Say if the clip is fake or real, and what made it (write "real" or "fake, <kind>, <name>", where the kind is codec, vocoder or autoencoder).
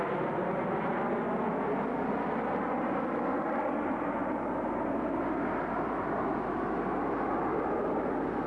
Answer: real